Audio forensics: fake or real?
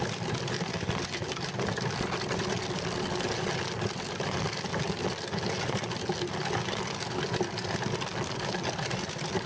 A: real